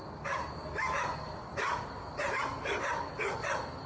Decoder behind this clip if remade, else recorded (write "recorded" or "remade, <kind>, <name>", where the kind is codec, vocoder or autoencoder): recorded